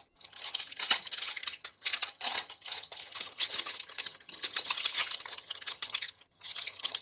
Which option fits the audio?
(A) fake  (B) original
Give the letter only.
A